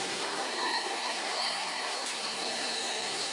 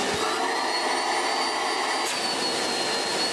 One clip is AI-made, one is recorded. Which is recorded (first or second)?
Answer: second